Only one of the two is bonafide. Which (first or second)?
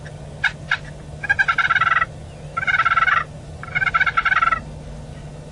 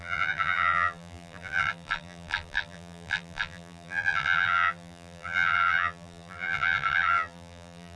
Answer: first